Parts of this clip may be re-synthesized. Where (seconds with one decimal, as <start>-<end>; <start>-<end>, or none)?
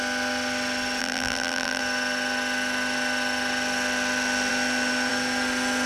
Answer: 1.0-1.8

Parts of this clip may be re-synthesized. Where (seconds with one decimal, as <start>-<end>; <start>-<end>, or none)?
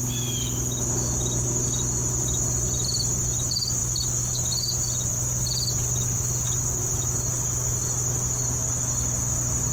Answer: none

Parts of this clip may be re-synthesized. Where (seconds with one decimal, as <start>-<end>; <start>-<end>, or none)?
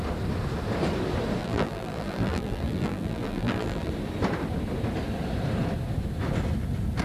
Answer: 1.4-3.9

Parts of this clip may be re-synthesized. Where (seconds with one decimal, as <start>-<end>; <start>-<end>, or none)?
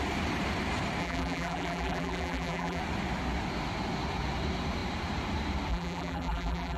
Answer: 1.0-2.8; 5.7-6.8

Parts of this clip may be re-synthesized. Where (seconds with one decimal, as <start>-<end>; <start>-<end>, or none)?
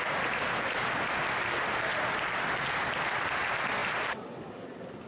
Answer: none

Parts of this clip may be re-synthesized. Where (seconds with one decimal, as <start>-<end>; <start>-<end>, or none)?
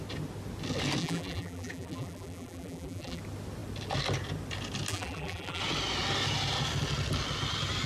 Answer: 1.0-3.2; 4.9-5.6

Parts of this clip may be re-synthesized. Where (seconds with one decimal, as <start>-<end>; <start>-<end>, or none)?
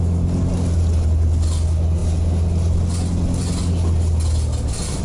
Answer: none